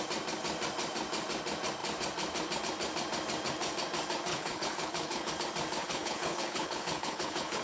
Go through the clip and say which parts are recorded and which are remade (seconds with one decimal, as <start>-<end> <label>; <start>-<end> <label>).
0.0-4.3 recorded; 4.3-5.3 remade; 5.3-5.8 recorded; 5.8-7.6 remade